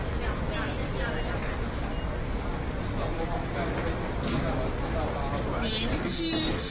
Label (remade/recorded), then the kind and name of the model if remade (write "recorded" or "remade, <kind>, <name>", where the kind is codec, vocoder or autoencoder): recorded